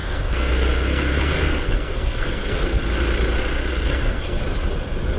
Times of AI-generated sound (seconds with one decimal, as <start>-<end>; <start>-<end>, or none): 0.0-2.8; 3.7-4.4